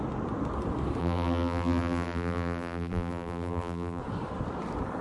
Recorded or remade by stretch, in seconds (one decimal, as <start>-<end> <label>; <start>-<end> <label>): 0.0-1.0 recorded; 1.0-4.0 remade; 4.0-5.0 recorded